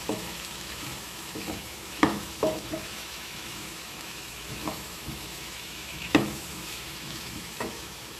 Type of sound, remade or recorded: remade